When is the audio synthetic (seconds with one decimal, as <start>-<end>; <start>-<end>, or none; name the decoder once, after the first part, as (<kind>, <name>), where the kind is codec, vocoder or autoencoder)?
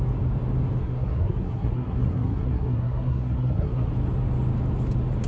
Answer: 0.8-3.9 (codec, SNAC)